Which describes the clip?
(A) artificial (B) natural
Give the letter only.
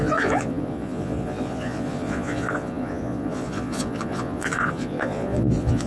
A